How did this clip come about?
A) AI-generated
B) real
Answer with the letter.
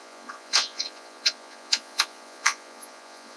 A